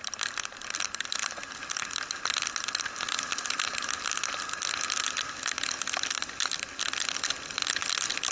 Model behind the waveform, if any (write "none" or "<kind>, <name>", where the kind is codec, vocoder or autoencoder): none